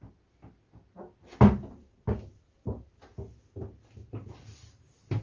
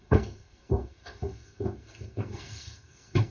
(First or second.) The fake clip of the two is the second